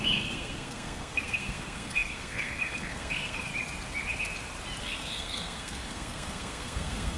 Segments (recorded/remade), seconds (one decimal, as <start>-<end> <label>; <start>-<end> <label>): 0.0-3.5 remade; 3.5-4.8 recorded; 4.8-7.2 remade